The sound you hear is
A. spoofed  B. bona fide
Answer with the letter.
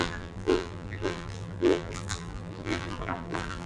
A